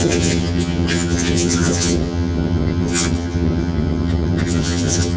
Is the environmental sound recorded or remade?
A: remade